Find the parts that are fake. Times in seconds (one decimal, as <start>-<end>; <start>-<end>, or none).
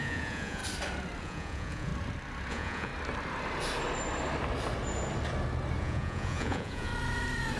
0.0-0.6; 1.2-1.9; 2.5-2.9; 5.8-6.9